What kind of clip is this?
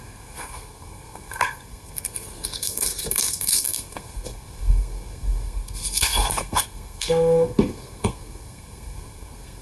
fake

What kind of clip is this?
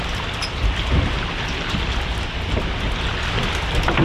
real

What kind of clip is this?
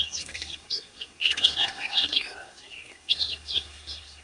fake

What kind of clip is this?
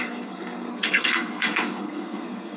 fake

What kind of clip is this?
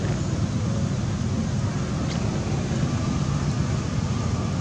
real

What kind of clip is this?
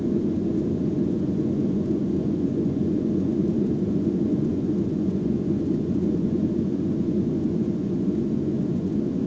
fake